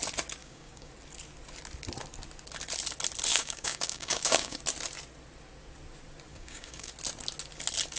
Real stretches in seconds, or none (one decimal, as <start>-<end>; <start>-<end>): 0.0-0.4; 0.9-3.3; 4.6-6.3; 6.9-8.0